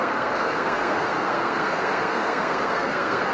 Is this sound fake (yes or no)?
yes